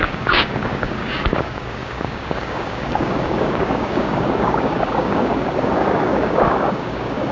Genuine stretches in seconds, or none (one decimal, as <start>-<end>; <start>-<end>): none